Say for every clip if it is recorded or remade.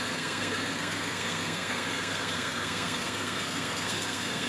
remade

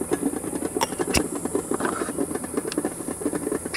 recorded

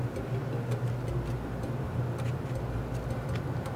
recorded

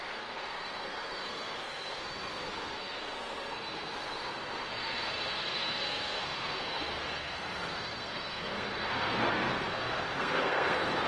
remade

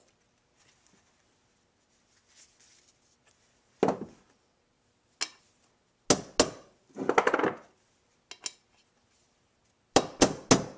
recorded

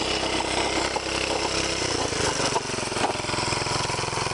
recorded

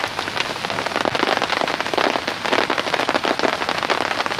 recorded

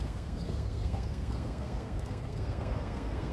remade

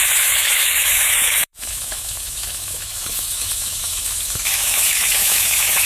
remade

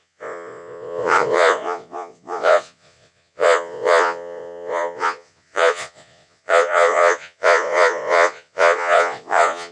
remade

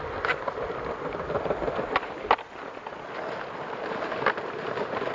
recorded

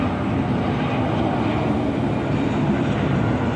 recorded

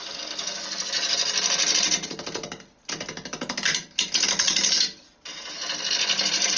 recorded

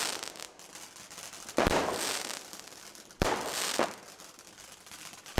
recorded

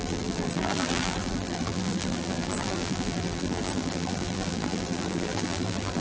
remade